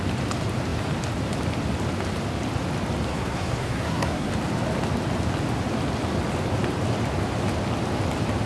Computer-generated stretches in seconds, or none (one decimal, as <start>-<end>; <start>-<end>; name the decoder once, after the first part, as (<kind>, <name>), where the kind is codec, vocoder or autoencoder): 3.1-4.3 (codec, SNAC)